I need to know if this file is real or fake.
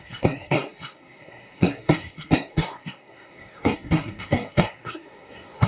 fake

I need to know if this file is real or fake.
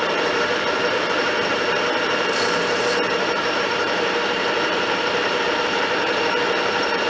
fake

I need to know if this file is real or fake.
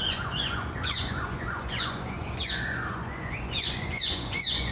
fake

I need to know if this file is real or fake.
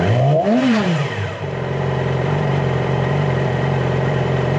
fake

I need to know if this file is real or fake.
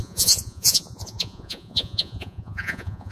fake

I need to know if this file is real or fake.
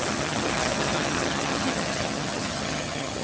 fake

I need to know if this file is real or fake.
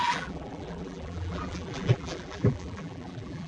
fake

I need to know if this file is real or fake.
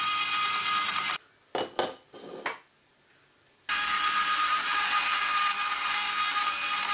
real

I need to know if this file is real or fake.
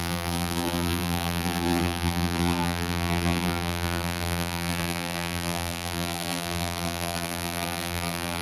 fake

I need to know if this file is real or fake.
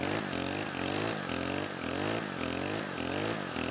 real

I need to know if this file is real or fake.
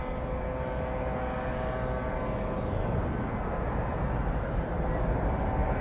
real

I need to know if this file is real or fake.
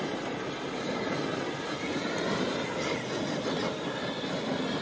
real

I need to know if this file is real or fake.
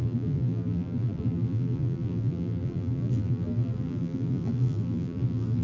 fake